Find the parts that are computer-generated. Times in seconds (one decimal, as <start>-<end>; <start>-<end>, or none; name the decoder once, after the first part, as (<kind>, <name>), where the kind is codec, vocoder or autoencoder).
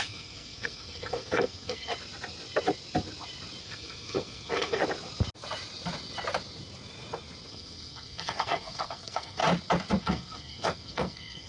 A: 0.0-1.9 (codec, SNAC); 3.6-4.8; 7.5-9.4; 10.0-11.5